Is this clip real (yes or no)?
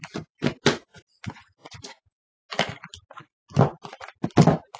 yes